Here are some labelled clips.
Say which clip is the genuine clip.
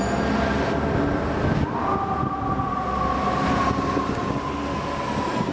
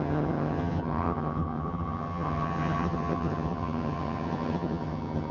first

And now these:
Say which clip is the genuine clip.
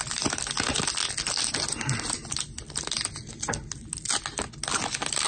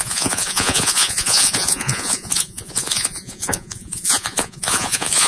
first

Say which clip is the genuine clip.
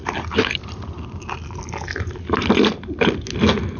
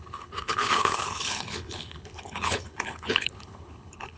first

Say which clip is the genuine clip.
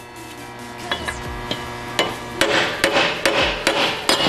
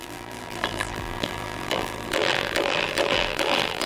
first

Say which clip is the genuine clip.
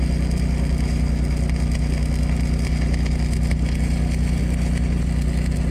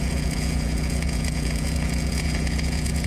first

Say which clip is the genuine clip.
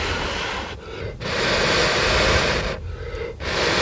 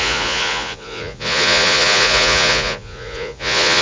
first